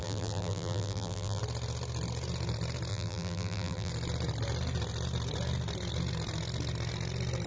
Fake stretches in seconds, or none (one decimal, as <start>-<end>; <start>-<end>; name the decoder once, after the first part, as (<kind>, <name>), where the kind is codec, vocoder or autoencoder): 0.0-1.4 (vocoder, BigVGAN v2); 2.9-3.9

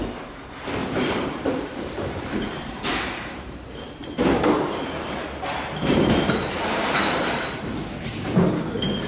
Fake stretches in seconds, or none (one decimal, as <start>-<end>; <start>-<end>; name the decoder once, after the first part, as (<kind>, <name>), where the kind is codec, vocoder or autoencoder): 0.8-4.4 (vocoder, BigVGAN v2); 5.8-8.6

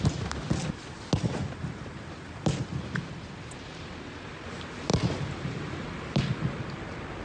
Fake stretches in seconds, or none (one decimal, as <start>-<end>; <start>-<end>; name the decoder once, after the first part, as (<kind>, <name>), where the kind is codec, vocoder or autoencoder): none

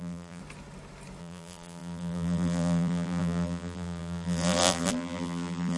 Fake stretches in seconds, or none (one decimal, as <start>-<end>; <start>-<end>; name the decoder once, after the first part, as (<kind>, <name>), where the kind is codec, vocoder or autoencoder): 0.0-0.4 (vocoder, BigVGAN v2); 1.2-5.8

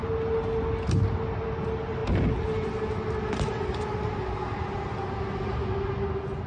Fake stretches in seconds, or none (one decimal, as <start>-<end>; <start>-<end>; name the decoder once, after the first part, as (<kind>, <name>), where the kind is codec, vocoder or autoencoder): none

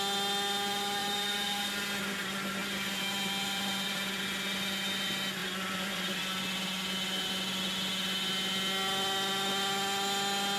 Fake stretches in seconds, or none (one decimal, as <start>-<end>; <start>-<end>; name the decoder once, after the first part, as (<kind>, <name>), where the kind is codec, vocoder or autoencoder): 1.0-1.6 (vocoder, BigVGAN v2); 2.6-4.2; 5.4-6.2

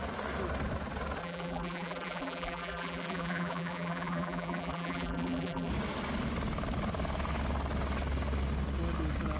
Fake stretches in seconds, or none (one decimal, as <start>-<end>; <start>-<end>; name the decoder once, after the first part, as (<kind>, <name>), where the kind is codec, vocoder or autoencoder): 1.2-5.7 (vocoder, BigVGAN v2)